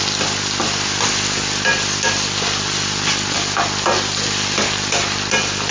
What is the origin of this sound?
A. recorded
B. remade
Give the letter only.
A